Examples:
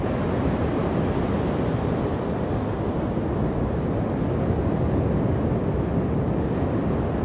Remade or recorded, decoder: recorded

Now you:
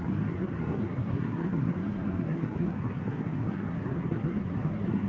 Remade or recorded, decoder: remade, codec, SNAC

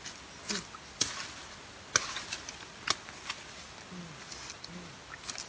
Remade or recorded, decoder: recorded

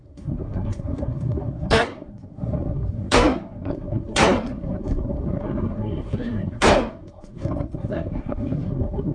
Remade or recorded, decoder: remade, codec, SNAC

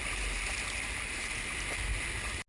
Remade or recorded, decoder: recorded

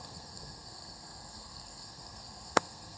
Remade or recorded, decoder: remade, codec, SNAC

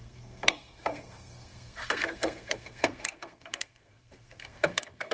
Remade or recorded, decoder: remade, codec, SNAC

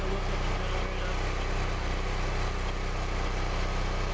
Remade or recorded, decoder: recorded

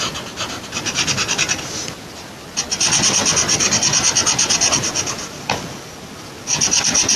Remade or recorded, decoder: recorded